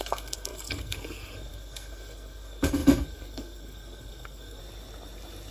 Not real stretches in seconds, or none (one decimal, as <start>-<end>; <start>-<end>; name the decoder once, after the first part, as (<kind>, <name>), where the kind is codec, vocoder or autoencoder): 0.0-4.6 (codec, SNAC)